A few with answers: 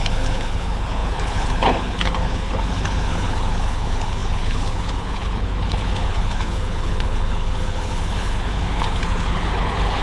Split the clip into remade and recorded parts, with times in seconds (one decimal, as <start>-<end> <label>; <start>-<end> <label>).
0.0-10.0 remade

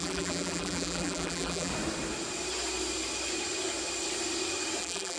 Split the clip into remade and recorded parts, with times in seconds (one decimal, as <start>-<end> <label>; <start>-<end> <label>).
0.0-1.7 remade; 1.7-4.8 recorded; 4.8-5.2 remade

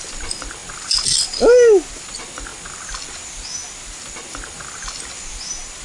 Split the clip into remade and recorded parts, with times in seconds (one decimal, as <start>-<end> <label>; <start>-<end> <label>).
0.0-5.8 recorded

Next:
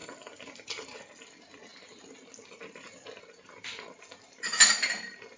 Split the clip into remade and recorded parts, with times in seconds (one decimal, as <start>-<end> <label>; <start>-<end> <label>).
0.0-1.0 remade; 1.0-5.4 recorded

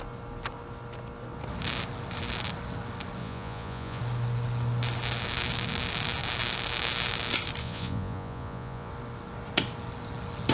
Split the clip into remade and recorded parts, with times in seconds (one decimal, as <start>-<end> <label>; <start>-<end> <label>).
0.0-3.2 recorded; 3.2-4.0 remade; 4.0-7.6 recorded; 7.6-8.9 remade; 8.9-10.5 recorded